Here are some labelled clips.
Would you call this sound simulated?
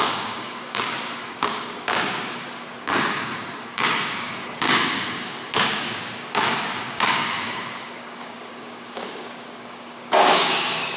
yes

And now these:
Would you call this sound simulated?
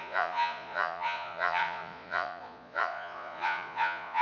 yes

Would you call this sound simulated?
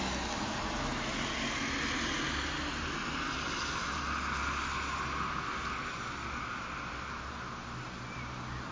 no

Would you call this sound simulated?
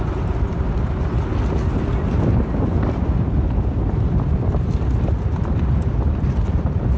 no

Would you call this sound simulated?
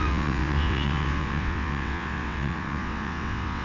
yes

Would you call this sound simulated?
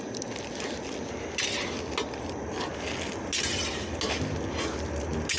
no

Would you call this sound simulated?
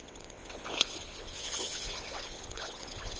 yes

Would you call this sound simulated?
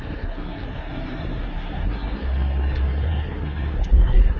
yes